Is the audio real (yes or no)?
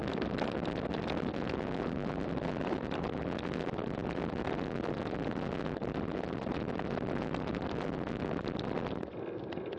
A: no